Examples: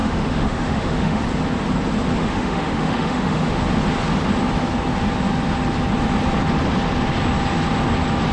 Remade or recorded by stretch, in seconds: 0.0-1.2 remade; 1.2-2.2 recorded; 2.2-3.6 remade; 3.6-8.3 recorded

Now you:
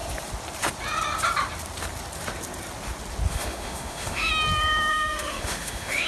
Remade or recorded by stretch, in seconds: 0.0-3.3 recorded; 3.3-4.3 remade; 4.3-4.9 recorded; 4.9-6.1 remade

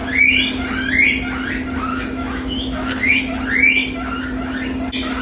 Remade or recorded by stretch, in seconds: 0.0-1.9 recorded; 1.9-3.2 remade; 3.2-5.2 recorded